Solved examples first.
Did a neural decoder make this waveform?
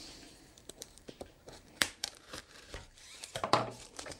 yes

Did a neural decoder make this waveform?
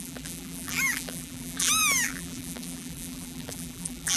yes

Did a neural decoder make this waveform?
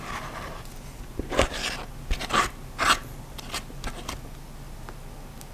no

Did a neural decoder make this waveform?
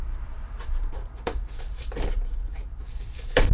yes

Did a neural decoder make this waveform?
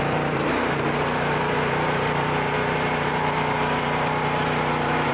yes